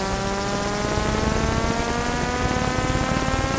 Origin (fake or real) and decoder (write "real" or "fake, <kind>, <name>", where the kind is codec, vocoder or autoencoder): real